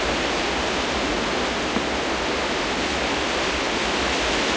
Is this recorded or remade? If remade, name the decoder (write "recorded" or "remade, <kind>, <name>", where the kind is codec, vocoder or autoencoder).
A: recorded